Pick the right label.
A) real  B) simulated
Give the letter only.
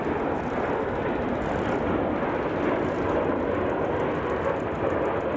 A